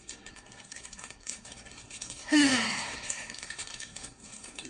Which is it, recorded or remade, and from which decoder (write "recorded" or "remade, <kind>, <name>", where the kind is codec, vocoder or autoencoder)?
remade, codec, SNAC